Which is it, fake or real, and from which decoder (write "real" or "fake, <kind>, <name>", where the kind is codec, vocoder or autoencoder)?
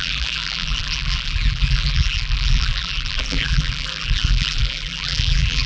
fake, vocoder, BigVGAN v2